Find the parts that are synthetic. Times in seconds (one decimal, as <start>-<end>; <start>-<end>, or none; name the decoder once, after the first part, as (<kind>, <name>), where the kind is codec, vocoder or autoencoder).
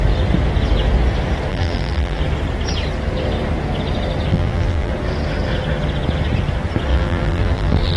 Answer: 1.5-2.2 (vocoder, BigVGAN v2); 4.3-4.9; 6.9-8.0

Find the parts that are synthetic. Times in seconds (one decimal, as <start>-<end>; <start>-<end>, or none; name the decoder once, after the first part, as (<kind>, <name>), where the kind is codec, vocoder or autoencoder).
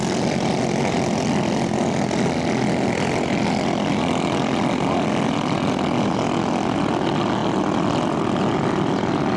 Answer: none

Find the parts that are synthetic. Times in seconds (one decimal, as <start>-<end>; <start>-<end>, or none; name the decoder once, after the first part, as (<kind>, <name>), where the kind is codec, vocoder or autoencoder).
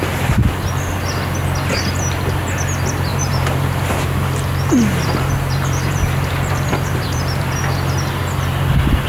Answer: 3.1-7.6 (vocoder, BigVGAN v2)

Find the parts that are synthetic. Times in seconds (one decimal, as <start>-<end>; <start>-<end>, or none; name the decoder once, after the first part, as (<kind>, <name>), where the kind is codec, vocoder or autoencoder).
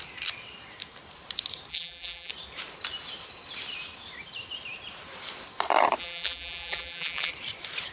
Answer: 1.7-2.3 (vocoder, BigVGAN v2); 6.0-7.3